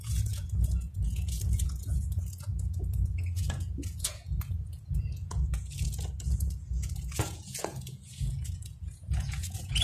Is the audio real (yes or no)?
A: no